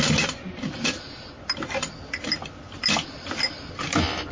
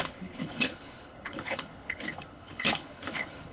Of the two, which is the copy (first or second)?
second